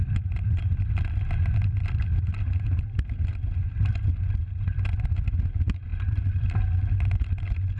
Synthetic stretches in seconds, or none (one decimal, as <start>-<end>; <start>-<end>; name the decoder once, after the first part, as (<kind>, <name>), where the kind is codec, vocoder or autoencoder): none